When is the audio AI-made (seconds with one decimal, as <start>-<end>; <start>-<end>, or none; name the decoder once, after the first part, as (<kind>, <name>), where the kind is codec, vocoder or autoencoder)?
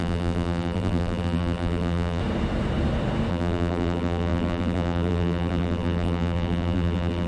0.0-2.2 (vocoder, BigVGAN v2); 3.3-7.3